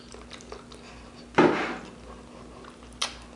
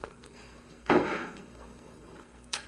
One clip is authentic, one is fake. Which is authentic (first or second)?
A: first